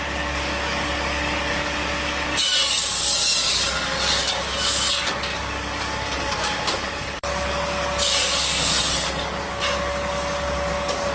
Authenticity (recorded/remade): remade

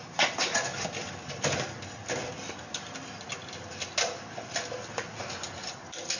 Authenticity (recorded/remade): recorded